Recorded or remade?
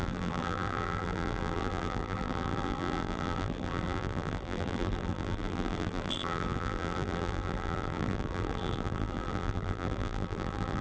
remade